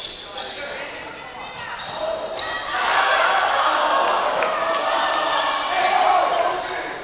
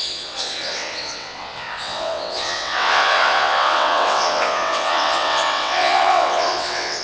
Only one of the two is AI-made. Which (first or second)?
second